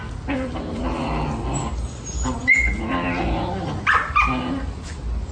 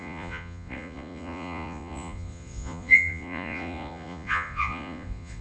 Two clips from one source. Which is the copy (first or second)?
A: second